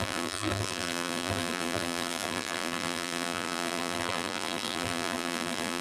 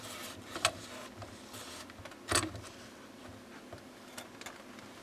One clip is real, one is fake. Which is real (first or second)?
second